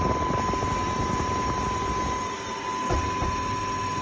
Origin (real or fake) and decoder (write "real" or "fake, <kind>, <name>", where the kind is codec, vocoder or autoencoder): real